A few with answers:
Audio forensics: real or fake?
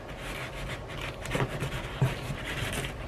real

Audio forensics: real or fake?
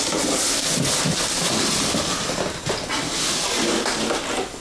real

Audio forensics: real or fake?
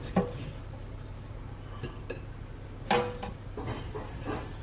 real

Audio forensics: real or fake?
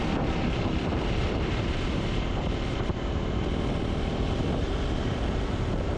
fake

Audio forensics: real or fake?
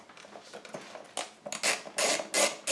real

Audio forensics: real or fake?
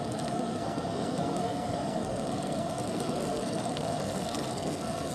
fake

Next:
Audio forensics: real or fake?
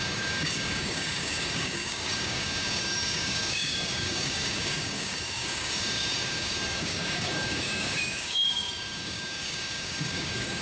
fake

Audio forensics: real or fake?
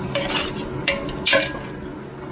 real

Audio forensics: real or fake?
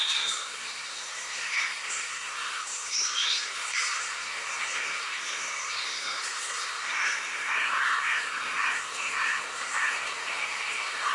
fake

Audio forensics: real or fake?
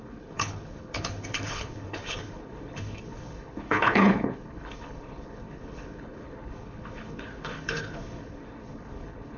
fake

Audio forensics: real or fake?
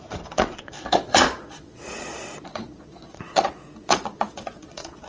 fake